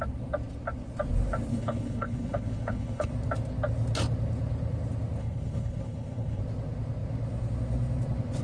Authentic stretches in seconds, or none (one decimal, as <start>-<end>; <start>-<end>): 0.0-1.5; 3.1-5.2; 6.4-8.4